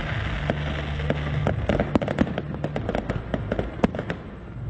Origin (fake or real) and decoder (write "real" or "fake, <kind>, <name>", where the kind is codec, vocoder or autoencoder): real